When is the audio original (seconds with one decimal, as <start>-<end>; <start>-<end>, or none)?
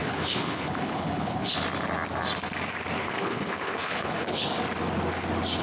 1.6-3.0; 4.5-5.6